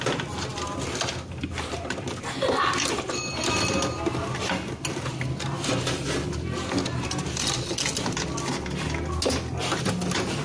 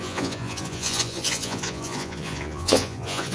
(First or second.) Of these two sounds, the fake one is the second